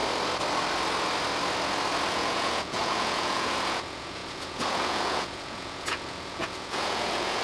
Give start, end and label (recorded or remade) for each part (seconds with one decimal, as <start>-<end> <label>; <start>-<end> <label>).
0.0-2.1 recorded; 2.1-7.4 remade